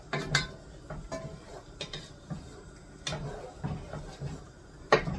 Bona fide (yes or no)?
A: yes